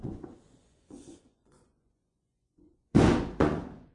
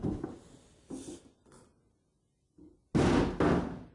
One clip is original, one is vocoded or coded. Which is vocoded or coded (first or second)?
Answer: first